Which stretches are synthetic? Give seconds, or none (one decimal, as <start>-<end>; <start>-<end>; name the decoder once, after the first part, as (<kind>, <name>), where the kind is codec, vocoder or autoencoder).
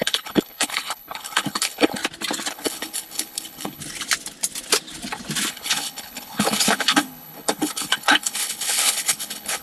0.0-2.0 (codec, HILCodec); 2.5-3.8; 5.5-9.6